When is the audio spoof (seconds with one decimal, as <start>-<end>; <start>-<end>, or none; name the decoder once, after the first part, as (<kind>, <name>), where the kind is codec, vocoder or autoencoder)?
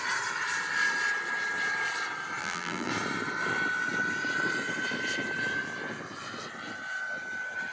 2.4-2.9 (vocoder, BigVGAN v2)